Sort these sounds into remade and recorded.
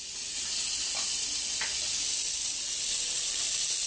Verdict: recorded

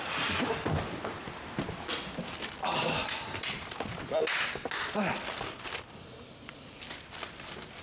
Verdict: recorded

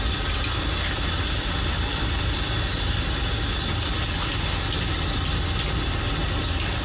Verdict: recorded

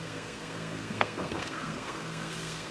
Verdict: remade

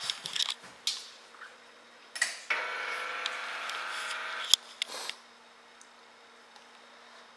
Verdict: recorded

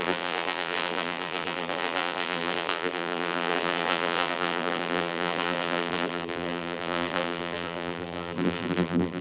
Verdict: remade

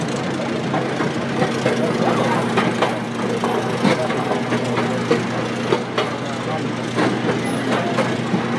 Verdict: recorded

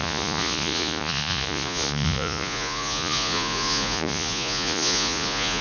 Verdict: remade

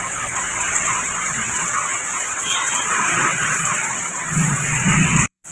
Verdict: remade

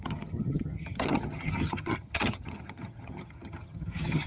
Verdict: remade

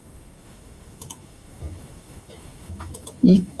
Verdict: remade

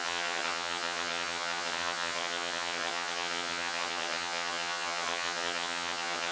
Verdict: remade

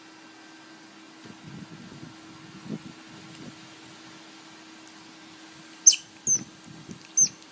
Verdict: recorded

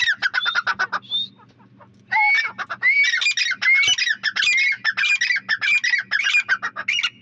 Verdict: recorded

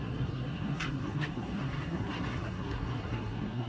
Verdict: remade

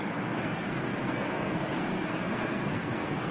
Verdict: remade